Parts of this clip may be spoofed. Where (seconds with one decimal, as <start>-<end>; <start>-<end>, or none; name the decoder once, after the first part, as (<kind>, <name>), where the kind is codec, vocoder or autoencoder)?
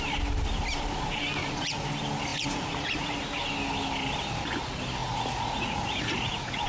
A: 1.4-1.9 (vocoder, Vocos); 2.3-3.2; 5.0-6.7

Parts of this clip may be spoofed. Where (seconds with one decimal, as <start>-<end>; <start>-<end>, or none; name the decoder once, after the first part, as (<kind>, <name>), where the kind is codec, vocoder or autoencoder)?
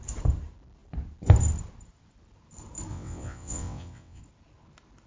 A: 2.9-4.2 (vocoder, WaveNeXt)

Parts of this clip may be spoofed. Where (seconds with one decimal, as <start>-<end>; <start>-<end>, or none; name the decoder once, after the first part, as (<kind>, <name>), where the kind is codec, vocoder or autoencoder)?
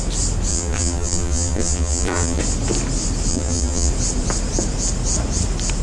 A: 0.5-2.4 (vocoder, BigVGAN v2); 3.3-3.9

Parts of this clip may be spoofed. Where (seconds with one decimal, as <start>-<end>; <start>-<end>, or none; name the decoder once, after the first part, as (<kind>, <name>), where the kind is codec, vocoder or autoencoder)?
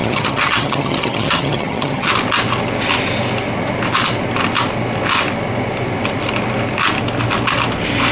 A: 0.0-2.1 (vocoder, HiFi-GAN)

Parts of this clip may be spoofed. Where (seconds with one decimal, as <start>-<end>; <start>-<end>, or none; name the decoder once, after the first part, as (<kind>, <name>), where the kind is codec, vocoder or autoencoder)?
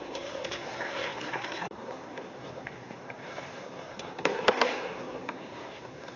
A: 0.0-6.2 (codec, SNAC)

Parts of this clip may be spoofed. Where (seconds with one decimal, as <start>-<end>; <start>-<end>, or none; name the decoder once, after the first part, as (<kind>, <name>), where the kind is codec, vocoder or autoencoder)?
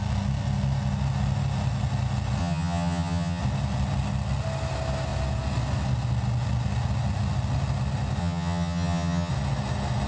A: 2.4-3.4 (vocoder, HiFi-GAN); 8.2-9.3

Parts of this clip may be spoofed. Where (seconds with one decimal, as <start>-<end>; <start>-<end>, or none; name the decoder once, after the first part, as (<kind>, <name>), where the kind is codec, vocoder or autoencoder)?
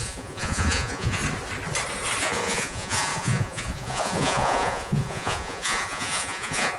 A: 0.0-1.2 (vocoder, Vocos); 2.2-6.8